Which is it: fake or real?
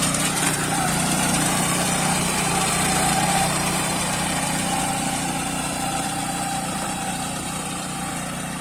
fake